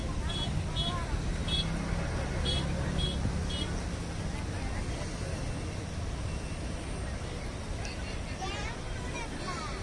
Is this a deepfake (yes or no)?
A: no